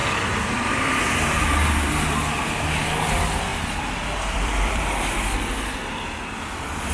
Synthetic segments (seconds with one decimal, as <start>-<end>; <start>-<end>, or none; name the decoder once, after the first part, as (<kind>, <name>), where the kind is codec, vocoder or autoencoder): 0.0-1.4 (vocoder, BigVGAN v2); 3.5-5.2